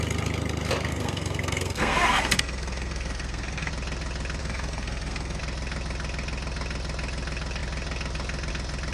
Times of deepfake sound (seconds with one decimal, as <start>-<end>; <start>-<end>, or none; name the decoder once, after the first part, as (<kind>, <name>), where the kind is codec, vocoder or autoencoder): 0.9-3.7 (codec, SNAC); 4.4-5.4